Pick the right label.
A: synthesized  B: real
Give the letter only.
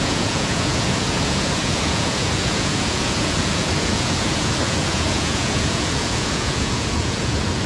A